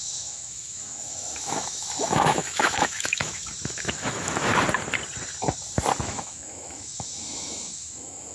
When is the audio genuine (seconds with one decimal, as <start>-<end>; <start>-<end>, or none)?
4.5-6.0